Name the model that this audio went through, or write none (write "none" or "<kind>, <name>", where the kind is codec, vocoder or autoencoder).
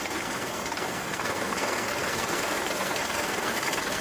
codec, SNAC